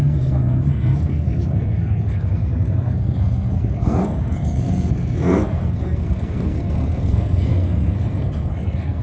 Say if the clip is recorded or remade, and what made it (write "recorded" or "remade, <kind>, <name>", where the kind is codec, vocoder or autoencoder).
remade, codec, SNAC